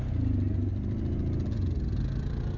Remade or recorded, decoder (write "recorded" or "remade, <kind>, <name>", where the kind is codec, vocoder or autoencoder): recorded